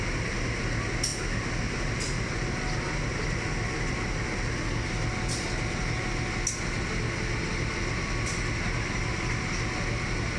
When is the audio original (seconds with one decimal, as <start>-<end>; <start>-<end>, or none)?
0.0-10.4